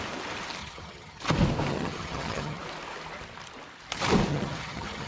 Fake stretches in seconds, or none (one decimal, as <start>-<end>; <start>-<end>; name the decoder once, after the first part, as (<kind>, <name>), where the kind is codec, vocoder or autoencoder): 0.6-1.2 (vocoder, HiFi-GAN); 1.7-2.6; 4.3-5.1

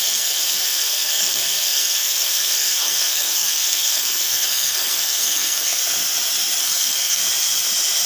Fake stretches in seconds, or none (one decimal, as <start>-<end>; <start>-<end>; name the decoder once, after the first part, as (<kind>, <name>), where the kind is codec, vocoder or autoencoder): 0.0-5.8 (codec, SNAC); 6.6-7.2